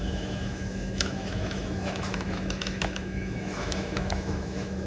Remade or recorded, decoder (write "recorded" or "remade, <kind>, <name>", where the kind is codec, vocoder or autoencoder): remade, autoencoder, DAC-VAE